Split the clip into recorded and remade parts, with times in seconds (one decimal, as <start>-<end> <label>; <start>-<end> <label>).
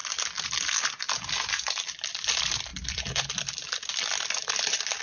0.0-5.0 recorded